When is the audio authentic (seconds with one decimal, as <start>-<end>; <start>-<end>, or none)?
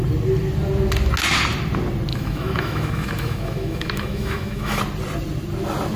0.0-2.1; 4.8-6.0